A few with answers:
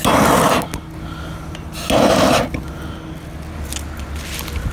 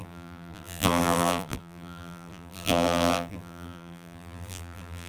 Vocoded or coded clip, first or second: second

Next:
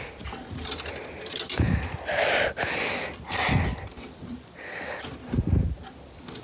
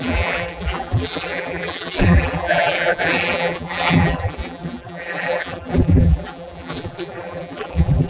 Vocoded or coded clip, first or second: second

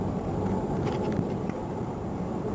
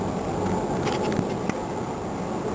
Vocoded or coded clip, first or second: first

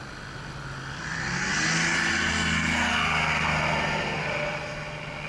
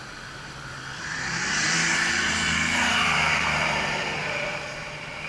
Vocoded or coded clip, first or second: second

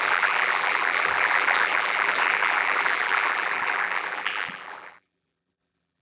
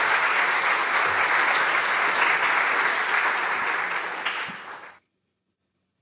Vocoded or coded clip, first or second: first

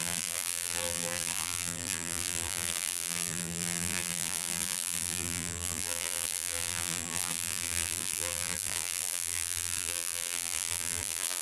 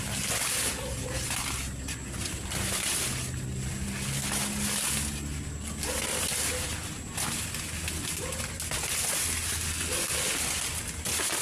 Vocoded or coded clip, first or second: first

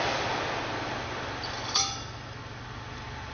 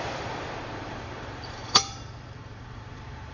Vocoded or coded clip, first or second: second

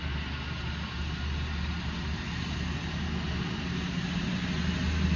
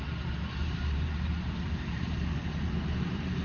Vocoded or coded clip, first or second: second